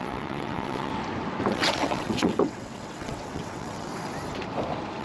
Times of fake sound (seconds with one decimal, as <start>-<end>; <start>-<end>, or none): 0.0-0.9; 1.5-3.9